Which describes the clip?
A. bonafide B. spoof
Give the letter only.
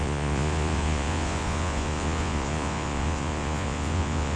B